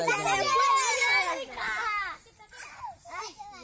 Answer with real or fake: real